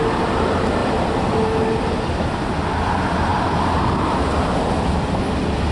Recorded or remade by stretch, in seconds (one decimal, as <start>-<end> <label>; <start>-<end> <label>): 0.0-5.7 recorded